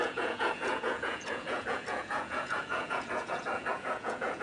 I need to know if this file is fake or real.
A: fake